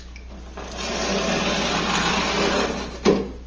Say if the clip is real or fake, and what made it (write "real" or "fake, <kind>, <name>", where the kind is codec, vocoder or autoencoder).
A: real